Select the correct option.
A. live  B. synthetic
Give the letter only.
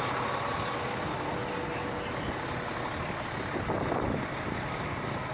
A